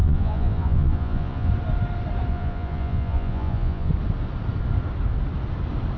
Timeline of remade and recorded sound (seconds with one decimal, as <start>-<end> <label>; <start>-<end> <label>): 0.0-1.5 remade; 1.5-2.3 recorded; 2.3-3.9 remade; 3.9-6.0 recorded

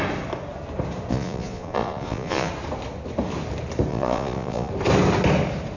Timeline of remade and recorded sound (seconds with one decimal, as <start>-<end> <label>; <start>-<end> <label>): 0.0-1.1 recorded; 1.1-2.5 remade; 2.5-3.9 recorded; 3.9-4.7 remade; 4.7-5.8 recorded

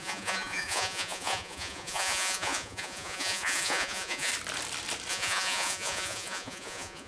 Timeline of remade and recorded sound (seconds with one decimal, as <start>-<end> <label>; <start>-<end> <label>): 0.0-4.3 remade; 4.3-5.1 recorded; 5.1-7.1 remade

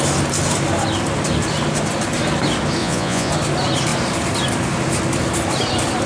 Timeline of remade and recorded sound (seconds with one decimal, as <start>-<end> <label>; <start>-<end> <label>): 0.0-2.8 recorded; 2.8-3.3 remade; 3.3-6.1 recorded

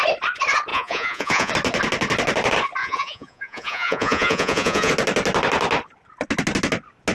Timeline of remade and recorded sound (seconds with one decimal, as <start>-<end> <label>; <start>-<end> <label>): 0.0-0.7 recorded; 0.7-1.5 remade; 1.5-2.8 recorded; 2.8-4.9 remade; 4.9-7.1 recorded

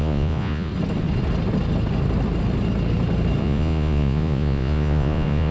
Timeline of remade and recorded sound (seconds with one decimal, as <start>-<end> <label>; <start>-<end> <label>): 0.0-0.7 remade; 0.7-3.4 recorded; 3.4-5.5 remade

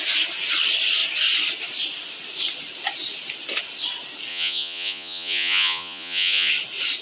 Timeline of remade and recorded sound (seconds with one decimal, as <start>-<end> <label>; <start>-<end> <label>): 0.0-4.3 recorded; 4.3-6.5 remade; 6.5-7.0 recorded

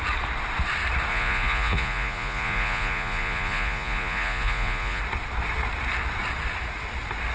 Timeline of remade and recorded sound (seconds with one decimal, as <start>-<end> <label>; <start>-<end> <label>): 0.0-1.1 recorded; 1.1-5.0 remade; 5.0-7.3 recorded